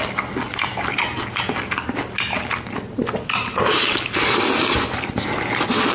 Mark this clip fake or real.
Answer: real